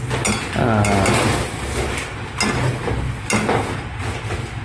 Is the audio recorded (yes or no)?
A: yes